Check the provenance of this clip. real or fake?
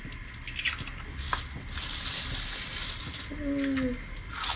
real